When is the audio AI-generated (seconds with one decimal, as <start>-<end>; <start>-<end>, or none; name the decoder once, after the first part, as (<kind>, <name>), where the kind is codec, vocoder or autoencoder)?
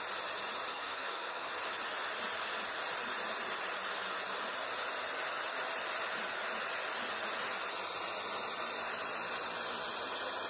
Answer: 0.7-1.5 (codec, SNAC)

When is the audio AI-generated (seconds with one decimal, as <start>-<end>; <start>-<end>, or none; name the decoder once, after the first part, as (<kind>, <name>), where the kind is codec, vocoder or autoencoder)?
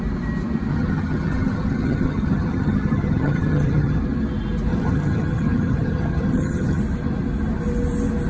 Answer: 0.7-4.0 (vocoder, HiFi-GAN); 4.7-6.8